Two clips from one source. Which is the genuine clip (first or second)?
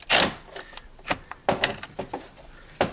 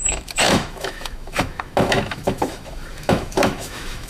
first